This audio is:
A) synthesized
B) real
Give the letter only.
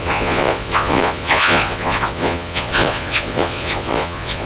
A